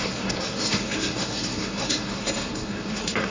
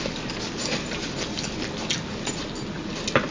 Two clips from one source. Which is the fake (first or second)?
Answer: first